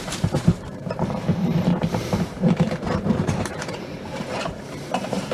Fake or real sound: fake